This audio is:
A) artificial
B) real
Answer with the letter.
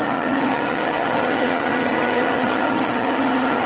A